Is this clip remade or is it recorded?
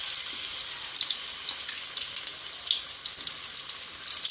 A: recorded